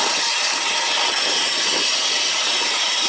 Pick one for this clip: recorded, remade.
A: recorded